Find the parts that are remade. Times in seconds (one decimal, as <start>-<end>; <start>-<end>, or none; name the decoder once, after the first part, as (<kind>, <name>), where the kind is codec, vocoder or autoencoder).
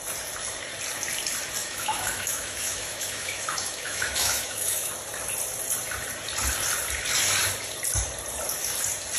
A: 1.6-4.9 (autoencoder, DAC-VAE)